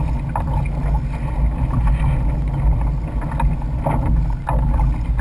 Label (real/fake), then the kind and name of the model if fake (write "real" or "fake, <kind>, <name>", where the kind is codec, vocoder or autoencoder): real